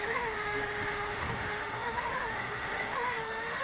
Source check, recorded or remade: remade